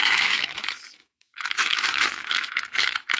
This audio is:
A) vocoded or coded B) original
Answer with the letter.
A